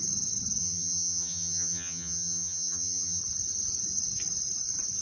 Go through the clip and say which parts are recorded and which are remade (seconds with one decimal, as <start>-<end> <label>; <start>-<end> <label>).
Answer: 0.0-0.6 recorded; 0.6-3.2 remade; 3.2-5.0 recorded